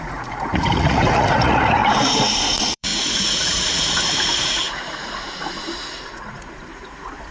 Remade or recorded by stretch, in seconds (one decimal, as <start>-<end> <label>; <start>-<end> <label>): 0.0-1.8 remade; 1.8-2.5 recorded; 2.5-7.3 remade